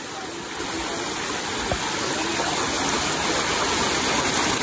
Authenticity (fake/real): real